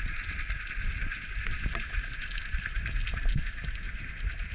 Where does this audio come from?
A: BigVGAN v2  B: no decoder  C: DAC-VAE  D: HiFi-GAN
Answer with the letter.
B